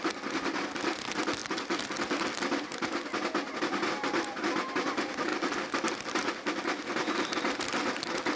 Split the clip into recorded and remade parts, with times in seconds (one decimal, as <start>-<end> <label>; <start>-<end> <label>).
0.0-8.4 recorded